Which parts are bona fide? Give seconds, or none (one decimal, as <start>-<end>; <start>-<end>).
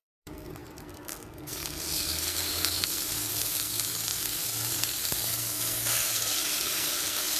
none